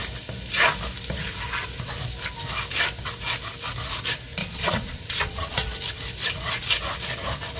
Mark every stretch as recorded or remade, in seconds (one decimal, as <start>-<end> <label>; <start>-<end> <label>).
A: 0.0-4.4 recorded; 4.4-5.7 remade; 5.7-7.6 recorded

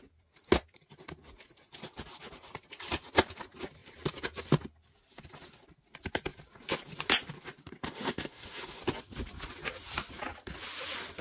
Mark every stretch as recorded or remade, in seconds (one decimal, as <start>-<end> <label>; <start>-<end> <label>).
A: 0.0-7.8 recorded; 7.8-8.8 remade; 8.8-11.2 recorded